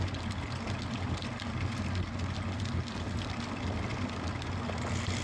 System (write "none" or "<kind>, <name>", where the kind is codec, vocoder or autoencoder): none